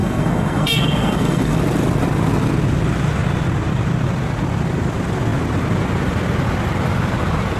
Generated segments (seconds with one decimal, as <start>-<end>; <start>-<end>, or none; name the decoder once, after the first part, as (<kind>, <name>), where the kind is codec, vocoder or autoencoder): 0.0-1.6 (codec, SNAC)